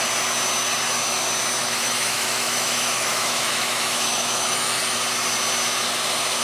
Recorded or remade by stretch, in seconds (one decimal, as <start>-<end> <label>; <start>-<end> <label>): 0.0-1.6 recorded; 1.6-4.8 remade; 4.8-6.4 recorded